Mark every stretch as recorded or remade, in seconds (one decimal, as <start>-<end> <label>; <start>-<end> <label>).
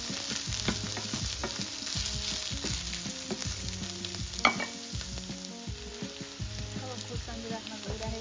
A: 0.0-8.2 recorded